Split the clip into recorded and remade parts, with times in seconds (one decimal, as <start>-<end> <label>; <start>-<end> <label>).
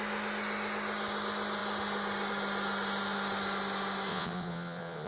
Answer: 0.0-4.1 recorded; 4.1-5.1 remade